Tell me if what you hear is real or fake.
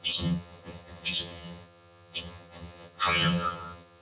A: fake